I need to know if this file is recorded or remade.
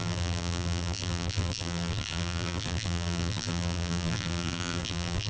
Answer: remade